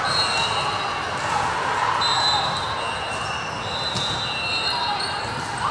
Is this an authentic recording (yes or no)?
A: yes